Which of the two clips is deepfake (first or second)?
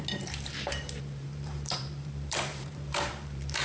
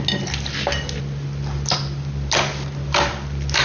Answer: first